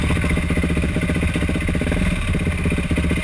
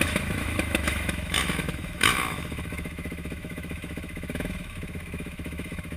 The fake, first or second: second